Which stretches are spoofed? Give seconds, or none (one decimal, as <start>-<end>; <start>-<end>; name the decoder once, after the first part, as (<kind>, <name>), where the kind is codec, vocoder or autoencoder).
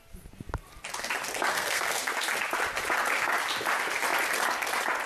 1.5-2.0 (codec, SNAC)